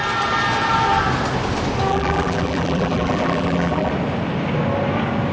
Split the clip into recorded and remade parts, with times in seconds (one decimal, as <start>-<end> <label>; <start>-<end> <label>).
0.0-1.9 recorded; 1.9-3.9 remade; 3.9-5.3 recorded